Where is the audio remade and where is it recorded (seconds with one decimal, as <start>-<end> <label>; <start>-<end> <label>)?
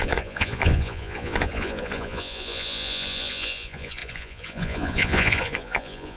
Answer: 0.0-6.2 remade